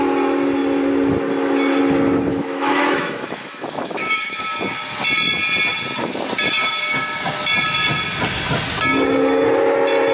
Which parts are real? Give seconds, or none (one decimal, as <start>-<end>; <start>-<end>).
0.0-2.3; 4.4-10.1